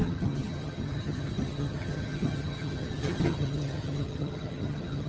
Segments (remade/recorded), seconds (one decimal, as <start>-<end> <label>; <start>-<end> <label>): 0.0-5.1 remade